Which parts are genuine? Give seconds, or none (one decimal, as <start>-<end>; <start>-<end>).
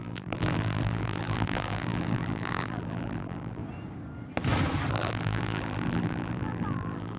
3.6-4.9